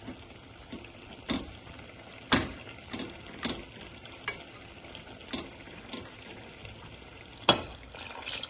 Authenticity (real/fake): real